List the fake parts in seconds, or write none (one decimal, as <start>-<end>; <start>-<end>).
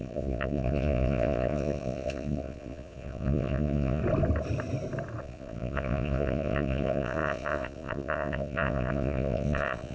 0.0-4.0; 5.2-9.9